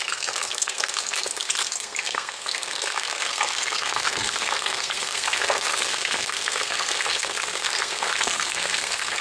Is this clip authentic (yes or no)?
no